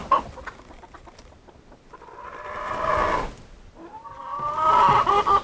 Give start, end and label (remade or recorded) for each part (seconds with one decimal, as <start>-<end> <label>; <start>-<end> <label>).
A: 0.0-5.4 recorded